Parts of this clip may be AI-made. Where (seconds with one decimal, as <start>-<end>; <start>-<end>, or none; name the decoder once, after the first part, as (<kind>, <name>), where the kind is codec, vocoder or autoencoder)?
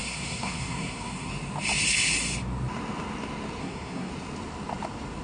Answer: 0.0-1.3 (codec, SNAC); 3.6-4.1